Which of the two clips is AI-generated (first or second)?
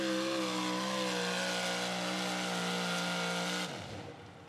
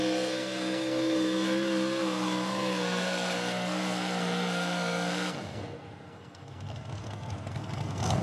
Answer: second